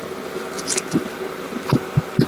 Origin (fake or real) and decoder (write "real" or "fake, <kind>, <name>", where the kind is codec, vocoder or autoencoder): real